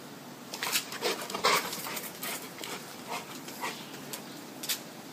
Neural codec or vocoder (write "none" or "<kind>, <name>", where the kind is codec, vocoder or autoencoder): none